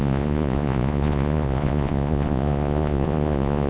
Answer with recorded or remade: remade